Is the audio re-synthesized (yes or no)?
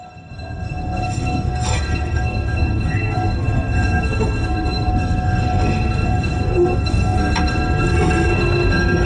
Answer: yes